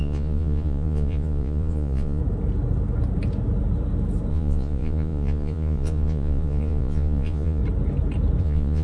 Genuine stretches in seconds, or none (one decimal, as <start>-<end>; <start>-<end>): 2.2-4.3; 7.6-8.4